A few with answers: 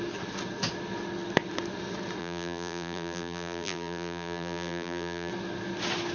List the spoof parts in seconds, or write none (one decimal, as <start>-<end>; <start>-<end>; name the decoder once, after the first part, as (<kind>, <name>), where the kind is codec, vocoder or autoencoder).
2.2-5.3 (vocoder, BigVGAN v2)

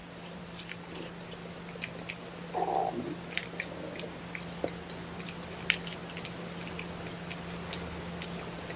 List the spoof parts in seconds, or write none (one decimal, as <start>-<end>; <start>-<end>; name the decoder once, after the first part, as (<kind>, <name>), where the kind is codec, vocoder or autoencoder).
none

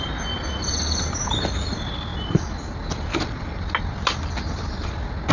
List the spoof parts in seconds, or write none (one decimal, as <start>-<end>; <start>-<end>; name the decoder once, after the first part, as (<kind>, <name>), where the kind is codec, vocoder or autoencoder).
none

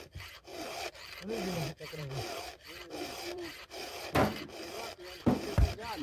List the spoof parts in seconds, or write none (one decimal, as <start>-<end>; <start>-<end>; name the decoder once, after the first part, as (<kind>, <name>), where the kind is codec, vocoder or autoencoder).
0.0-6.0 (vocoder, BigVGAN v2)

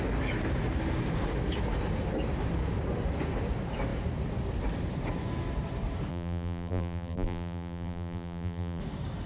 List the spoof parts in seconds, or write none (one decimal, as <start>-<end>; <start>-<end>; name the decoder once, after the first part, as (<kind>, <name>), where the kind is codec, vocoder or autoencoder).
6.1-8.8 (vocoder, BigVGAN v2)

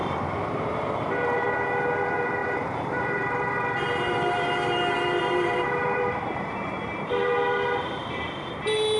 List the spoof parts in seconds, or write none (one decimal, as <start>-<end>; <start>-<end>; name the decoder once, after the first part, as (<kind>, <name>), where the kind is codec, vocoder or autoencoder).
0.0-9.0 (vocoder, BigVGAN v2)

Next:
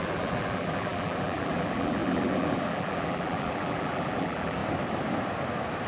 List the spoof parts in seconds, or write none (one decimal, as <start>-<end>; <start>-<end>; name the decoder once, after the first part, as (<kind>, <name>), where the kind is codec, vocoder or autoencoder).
0.0-4.6 (vocoder, BigVGAN v2)